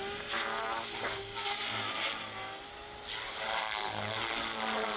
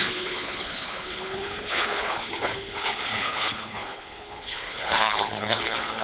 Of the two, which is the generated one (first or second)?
second